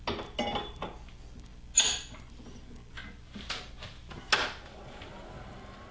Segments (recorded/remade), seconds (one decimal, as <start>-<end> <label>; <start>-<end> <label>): 0.0-5.9 recorded